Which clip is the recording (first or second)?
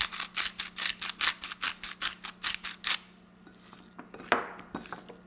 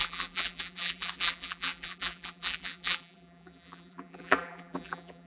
first